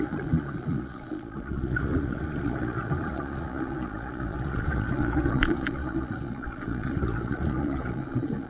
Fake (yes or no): yes